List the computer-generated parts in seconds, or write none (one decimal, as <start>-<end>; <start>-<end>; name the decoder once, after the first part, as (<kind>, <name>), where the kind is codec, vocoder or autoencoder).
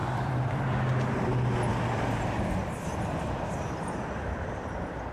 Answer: 0.0-1.2 (vocoder, BigVGAN v2); 1.7-5.1